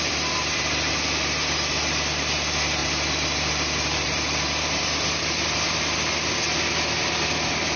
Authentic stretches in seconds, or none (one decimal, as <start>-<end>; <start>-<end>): none